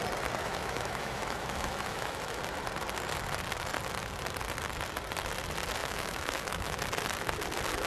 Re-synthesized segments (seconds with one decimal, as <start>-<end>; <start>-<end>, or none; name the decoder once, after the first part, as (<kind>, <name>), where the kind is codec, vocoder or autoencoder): 0.4-2.4 (autoencoder, DAC-VAE); 5.8-6.8